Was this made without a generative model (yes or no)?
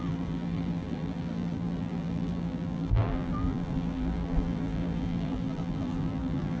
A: no